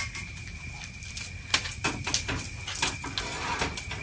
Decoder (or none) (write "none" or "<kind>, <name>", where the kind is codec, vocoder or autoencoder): none